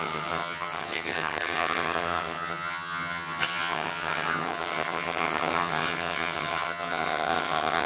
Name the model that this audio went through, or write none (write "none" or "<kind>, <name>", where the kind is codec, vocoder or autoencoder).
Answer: vocoder, HiFi-GAN